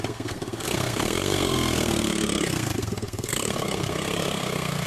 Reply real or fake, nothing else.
fake